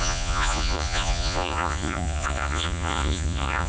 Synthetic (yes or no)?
yes